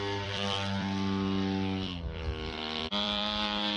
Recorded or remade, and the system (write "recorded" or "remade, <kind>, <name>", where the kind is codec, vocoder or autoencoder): remade, vocoder, BigVGAN v2